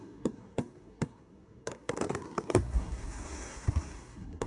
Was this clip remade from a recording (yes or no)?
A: yes